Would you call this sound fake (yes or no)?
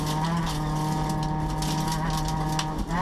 no